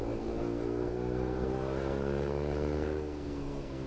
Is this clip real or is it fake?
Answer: fake